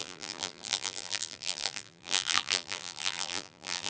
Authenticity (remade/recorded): remade